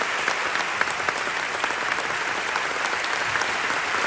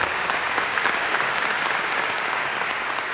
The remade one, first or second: second